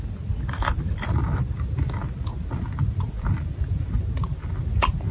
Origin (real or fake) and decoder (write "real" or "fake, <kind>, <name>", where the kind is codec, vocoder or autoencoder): real